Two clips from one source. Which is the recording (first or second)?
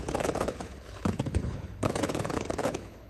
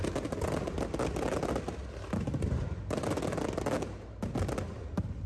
second